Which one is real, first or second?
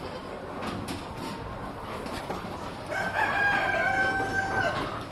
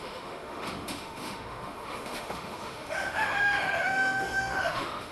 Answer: first